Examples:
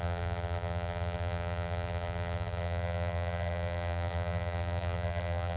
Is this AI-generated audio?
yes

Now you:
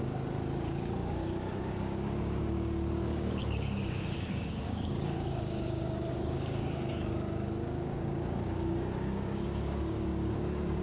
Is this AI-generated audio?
yes